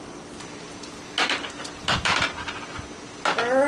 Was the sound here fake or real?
real